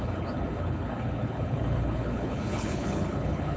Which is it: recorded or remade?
remade